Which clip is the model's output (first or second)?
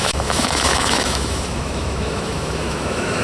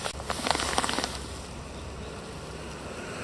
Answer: first